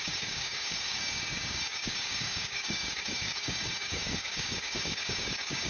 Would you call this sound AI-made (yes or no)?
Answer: yes